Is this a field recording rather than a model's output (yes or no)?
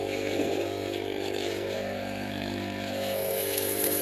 no